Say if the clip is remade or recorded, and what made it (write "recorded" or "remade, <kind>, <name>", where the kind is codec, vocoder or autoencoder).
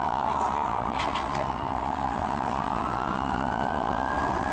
remade, vocoder, WaveNeXt